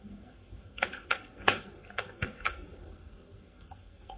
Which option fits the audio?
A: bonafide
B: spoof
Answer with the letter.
B